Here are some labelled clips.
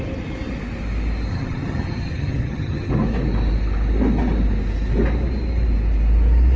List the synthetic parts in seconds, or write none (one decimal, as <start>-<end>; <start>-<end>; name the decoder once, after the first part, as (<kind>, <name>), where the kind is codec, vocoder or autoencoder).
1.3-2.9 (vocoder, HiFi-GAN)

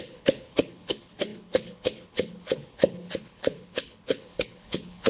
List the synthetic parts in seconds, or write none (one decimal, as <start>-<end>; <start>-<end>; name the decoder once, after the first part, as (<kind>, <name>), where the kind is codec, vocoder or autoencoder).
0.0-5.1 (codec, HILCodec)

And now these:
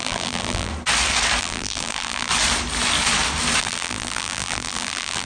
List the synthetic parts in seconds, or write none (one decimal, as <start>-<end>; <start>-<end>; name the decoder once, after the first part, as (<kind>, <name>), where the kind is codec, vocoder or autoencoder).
0.0-0.7 (vocoder, BigVGAN v2); 1.4-2.3; 3.6-5.3

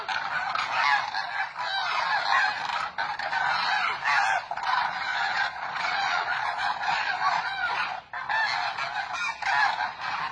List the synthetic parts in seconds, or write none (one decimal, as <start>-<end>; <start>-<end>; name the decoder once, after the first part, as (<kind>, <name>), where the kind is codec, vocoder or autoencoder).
5.1-7.9 (vocoder, Vocos)